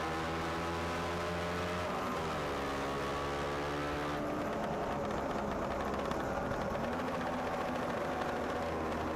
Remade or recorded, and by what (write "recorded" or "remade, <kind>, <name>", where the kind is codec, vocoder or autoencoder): recorded